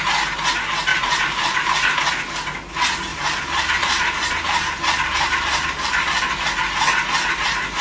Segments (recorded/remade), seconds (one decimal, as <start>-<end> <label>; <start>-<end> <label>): 0.0-0.9 recorded; 0.9-2.1 remade; 2.1-3.1 recorded; 3.1-6.2 remade; 6.2-7.8 recorded

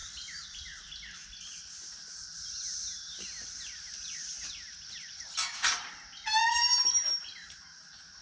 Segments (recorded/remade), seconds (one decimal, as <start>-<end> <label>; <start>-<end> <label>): 0.0-1.9 recorded; 1.9-4.3 remade; 4.3-6.5 recorded; 6.5-8.2 remade

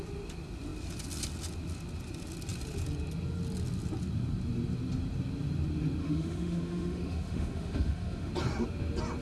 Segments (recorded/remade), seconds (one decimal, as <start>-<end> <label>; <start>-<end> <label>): 0.0-6.0 recorded; 6.0-8.3 remade; 8.3-9.2 recorded

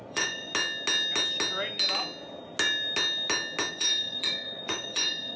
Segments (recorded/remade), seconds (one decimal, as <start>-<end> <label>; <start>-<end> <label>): 0.0-0.5 remade; 0.5-3.7 recorded; 3.7-5.4 remade

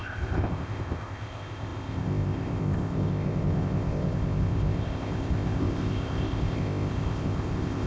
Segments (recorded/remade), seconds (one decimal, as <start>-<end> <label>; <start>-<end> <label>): 0.0-7.9 remade

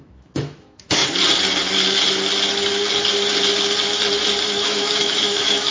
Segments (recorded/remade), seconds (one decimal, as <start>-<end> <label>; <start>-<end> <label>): 0.0-1.0 remade; 1.0-4.4 recorded; 4.4-5.7 remade

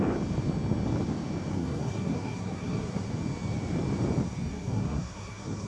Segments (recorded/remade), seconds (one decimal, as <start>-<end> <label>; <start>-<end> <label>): 0.0-1.5 recorded; 1.5-3.1 remade; 3.1-4.5 recorded; 4.5-5.7 remade